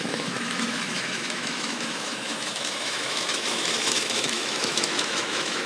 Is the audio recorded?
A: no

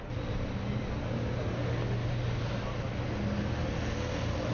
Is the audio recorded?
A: yes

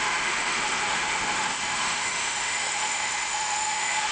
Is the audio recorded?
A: no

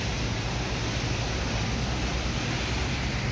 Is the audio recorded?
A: yes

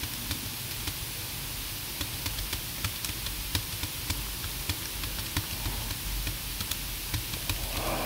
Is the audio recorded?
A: yes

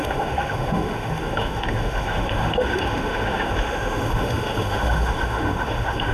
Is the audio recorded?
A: no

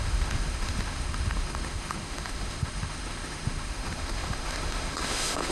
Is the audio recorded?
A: no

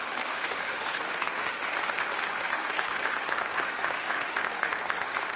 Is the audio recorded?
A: no